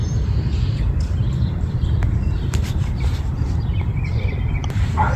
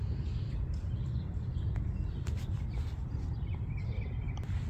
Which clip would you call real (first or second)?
second